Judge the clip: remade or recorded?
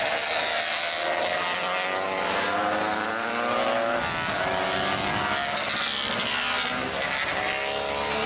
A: recorded